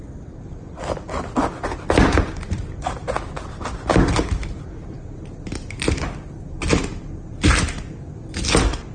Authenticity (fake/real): real